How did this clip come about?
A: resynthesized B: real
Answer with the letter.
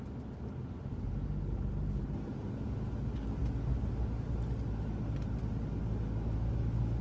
B